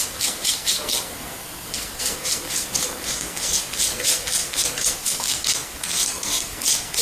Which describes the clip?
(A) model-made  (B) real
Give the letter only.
A